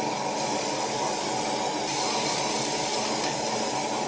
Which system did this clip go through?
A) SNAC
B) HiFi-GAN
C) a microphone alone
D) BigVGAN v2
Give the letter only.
C